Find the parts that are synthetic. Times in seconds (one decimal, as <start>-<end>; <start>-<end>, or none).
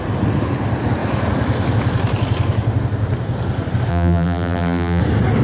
3.9-5.0